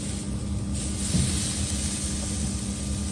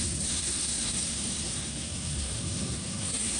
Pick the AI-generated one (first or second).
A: second